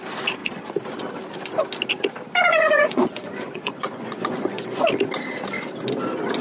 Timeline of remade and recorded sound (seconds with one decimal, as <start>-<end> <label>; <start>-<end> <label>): 0.0-2.5 recorded; 2.5-4.8 remade; 4.8-6.4 recorded